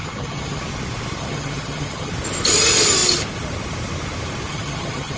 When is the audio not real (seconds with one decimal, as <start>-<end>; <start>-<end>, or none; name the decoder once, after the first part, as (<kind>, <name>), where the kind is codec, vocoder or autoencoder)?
0.0-0.6 (vocoder, HiFi-GAN); 1.2-2.1; 4.5-5.2